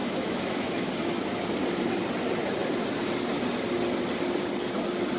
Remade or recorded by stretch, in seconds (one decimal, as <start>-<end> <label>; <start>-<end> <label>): 0.0-0.9 remade; 0.9-5.2 recorded